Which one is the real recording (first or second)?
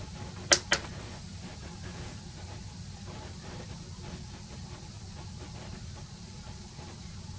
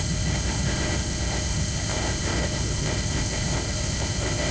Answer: first